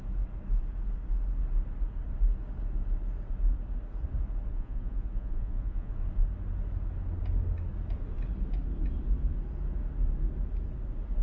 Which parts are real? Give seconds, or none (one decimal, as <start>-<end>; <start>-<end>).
0.0-4.5; 5.9-11.2